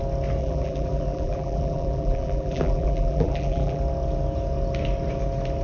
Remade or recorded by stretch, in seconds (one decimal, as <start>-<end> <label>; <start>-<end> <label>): 0.0-0.4 recorded; 0.4-3.8 remade; 3.8-5.6 recorded